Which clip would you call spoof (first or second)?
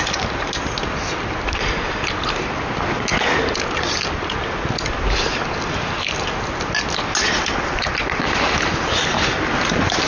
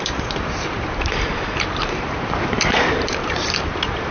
second